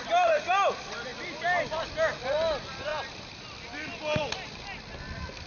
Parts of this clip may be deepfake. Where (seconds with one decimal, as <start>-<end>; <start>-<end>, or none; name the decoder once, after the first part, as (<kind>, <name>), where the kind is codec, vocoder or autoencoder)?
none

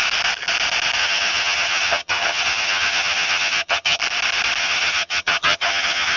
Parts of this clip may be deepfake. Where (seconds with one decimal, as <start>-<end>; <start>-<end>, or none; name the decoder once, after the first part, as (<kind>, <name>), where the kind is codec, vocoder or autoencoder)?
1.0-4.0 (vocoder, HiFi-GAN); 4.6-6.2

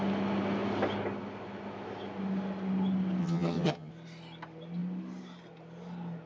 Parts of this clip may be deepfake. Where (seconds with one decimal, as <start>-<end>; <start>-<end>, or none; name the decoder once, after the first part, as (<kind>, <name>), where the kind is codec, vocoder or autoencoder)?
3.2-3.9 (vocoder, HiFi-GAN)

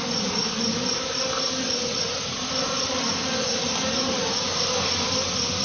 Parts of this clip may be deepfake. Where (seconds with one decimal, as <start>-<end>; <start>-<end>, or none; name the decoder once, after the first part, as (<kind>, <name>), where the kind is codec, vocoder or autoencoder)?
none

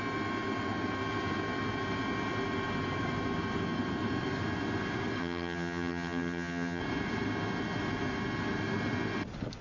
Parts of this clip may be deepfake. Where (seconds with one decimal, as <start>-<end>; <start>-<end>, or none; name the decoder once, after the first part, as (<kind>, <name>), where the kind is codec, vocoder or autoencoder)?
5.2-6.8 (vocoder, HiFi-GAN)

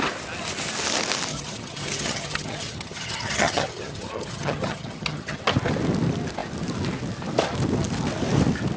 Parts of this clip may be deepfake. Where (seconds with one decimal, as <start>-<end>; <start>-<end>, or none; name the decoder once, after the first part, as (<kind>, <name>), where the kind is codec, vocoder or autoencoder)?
1.3-5.4 (vocoder, HiFi-GAN)

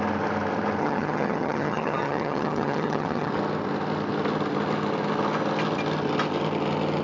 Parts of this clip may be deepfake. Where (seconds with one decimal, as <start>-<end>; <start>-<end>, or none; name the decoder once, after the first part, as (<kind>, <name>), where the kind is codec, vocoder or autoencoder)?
0.8-3.3 (vocoder, HiFi-GAN)

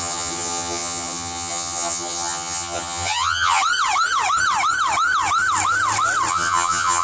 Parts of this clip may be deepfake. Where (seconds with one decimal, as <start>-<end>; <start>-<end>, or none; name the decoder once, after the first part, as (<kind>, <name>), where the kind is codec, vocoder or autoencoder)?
0.0-3.6 (vocoder, HiFi-GAN); 6.3-7.0